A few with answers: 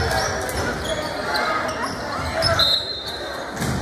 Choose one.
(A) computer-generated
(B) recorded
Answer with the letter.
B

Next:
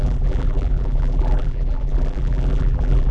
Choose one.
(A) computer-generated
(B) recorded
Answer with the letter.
A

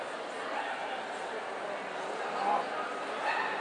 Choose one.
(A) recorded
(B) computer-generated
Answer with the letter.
A